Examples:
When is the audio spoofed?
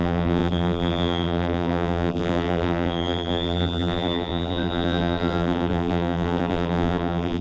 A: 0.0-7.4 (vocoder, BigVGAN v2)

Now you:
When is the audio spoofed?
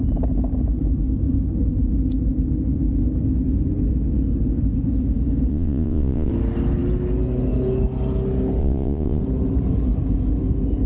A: 5.5-6.3 (vocoder, Vocos); 8.6-9.2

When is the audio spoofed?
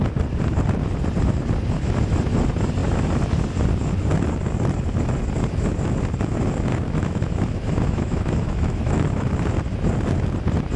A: 6.7-9.3 (autoencoder, DAC-VAE)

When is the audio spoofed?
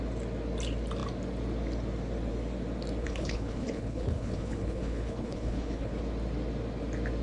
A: 3.0-6.0 (codec, HILCodec)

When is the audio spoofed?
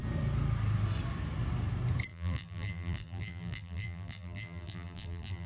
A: 2.1-5.5 (vocoder, BigVGAN v2)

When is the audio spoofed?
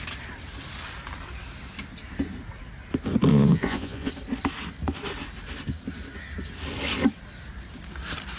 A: 3.3-4.1 (vocoder, Vocos)